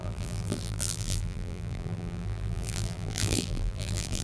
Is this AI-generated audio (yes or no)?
yes